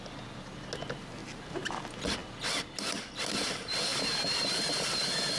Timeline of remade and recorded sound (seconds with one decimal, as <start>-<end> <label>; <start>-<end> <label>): 0.0-1.2 recorded; 1.2-1.7 remade; 1.7-3.9 recorded; 3.9-4.7 remade; 4.7-5.4 recorded